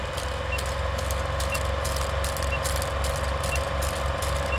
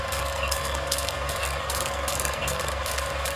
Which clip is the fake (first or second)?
second